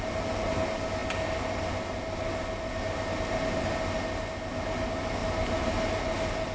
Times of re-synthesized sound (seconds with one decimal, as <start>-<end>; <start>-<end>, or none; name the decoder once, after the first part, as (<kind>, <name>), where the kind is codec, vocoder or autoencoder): none